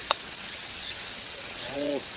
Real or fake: fake